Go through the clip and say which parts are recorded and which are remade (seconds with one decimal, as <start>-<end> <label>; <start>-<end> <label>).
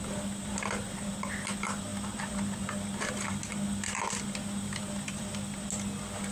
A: 0.0-6.3 recorded